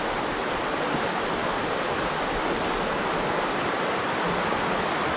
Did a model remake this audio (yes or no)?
no